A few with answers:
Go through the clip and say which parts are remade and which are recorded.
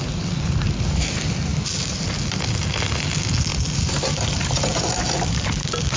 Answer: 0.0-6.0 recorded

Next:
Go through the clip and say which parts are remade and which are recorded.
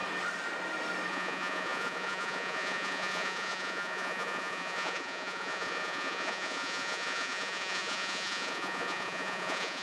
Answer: 0.0-1.1 recorded; 1.1-9.8 remade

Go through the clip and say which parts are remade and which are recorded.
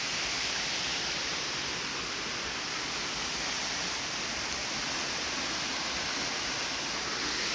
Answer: 0.0-7.5 recorded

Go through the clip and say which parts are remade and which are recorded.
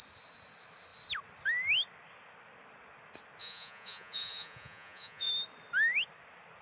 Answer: 0.0-3.4 recorded; 3.4-5.3 remade; 5.3-6.6 recorded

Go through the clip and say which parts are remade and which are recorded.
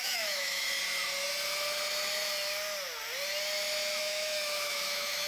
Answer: 0.0-0.8 remade; 0.8-4.0 recorded; 4.0-5.3 remade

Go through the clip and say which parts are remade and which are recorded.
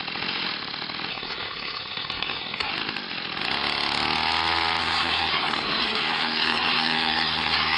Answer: 0.0-1.1 recorded; 1.1-2.7 remade; 2.7-4.8 recorded; 4.8-7.8 remade